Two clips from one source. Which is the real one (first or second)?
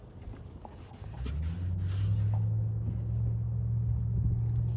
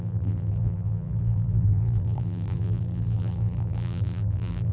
first